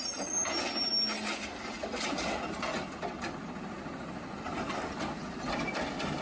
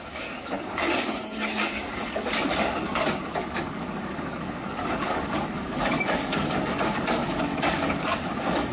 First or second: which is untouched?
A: first